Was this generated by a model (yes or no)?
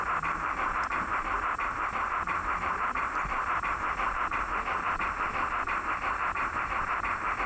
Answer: yes